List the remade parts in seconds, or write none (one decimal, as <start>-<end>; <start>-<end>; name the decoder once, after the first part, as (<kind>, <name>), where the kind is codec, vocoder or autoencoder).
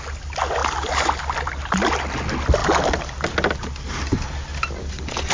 0.6-2.0 (vocoder, BigVGAN v2)